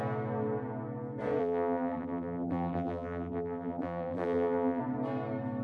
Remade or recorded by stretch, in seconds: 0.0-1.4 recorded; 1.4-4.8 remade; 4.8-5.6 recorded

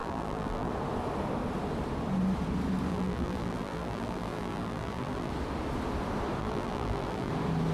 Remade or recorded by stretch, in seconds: 0.0-0.7 remade; 0.7-2.9 recorded; 2.9-5.3 remade; 5.3-6.4 recorded; 6.4-7.3 remade; 7.3-7.7 recorded